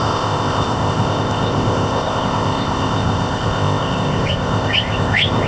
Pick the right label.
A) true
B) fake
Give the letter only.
B